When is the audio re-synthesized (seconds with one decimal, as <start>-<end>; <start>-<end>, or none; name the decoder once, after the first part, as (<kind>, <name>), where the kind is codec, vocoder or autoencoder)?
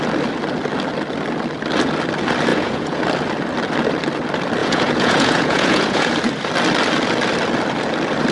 2.5-3.0 (vocoder, Vocos); 4.6-6.1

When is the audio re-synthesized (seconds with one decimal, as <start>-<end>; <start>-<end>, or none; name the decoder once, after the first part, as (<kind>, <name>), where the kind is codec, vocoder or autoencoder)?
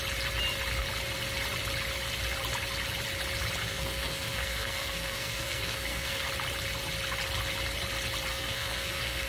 3.6-6.3 (codec, SNAC); 8.3-9.3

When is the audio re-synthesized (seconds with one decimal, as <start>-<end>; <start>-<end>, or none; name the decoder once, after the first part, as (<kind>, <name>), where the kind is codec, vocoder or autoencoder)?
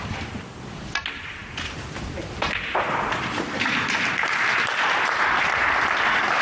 none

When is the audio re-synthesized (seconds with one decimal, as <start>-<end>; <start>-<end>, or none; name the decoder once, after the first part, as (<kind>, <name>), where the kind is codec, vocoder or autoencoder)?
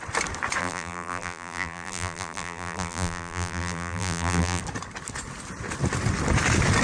0.6-4.6 (vocoder, BigVGAN v2)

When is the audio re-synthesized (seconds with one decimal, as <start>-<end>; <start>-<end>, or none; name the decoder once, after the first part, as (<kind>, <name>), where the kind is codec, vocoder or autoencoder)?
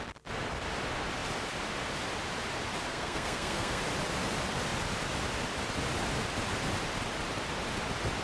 2.9-3.8 (codec, SNAC)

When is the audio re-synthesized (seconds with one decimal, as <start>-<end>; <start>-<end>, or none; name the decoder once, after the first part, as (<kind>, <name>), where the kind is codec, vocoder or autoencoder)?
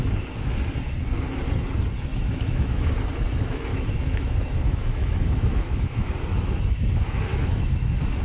2.1-3.0 (autoencoder, DAC-VAE); 3.7-6.1; 7.3-8.2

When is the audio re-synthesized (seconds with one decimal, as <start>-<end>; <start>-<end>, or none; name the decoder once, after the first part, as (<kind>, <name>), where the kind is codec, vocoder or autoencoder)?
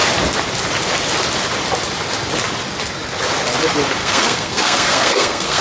4.0-5.6 (codec, SNAC)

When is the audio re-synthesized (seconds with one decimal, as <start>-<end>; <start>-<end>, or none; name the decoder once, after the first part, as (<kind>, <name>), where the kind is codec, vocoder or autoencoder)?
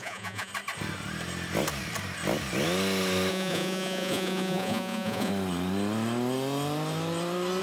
0.0-0.5 (vocoder, Vocos); 3.3-5.3